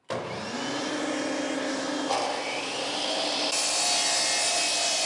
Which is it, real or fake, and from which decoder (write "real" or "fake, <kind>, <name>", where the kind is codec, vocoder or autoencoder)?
real